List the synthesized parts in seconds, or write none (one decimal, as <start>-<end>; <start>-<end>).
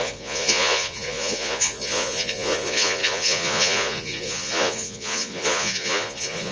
0.0-6.5